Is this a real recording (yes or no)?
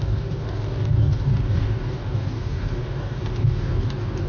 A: no